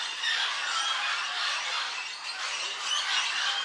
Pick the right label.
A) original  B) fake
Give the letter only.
A